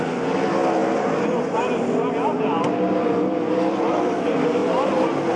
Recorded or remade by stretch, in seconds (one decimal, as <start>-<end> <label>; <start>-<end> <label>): 0.0-5.4 recorded